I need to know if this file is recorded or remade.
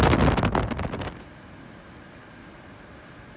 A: recorded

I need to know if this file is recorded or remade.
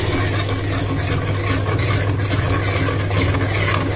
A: recorded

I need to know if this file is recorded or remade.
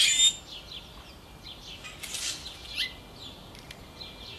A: recorded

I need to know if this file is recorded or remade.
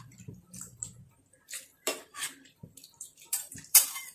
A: remade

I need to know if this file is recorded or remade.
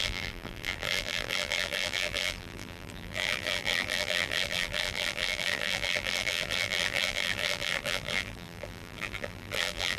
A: remade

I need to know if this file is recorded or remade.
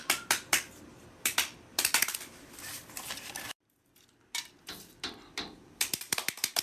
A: remade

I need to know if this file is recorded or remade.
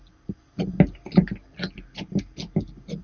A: recorded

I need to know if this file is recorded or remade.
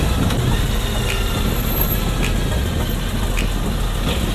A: recorded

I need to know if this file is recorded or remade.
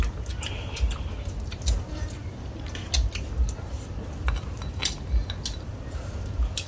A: recorded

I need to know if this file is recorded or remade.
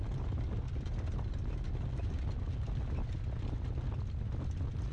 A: recorded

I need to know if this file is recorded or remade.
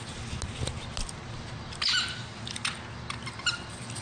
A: recorded